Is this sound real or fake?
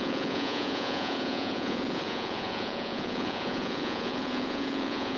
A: fake